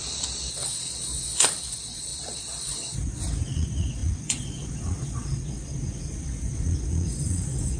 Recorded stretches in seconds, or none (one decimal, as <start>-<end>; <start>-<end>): 0.0-0.5